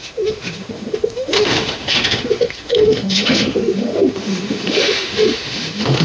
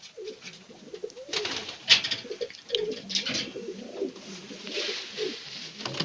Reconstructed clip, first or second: first